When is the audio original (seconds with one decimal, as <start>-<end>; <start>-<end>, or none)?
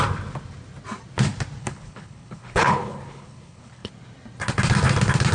0.0-1.6; 3.9-5.3